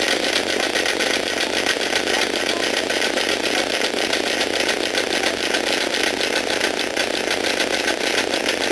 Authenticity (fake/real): real